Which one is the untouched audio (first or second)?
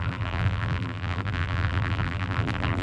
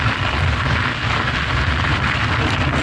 second